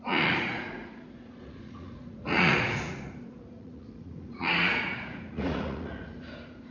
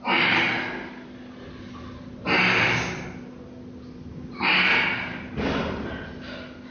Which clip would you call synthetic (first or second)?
first